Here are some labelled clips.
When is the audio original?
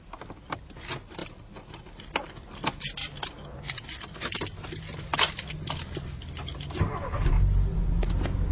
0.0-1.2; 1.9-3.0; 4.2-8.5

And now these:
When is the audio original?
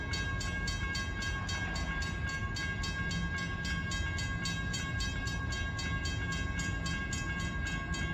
0.0-4.7; 5.5-8.1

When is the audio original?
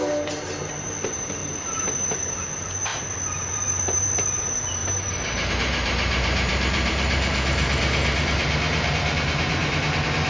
9.6-10.3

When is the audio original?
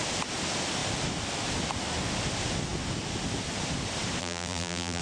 0.0-4.2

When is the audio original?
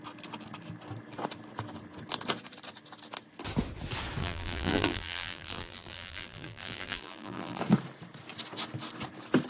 0.0-4.2; 7.6-9.5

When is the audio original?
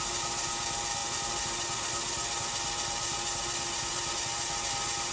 0.0-5.1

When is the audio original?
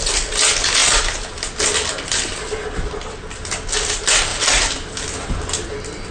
0.0-4.3; 5.3-6.1